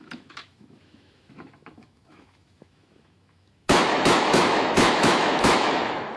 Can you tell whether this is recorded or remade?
remade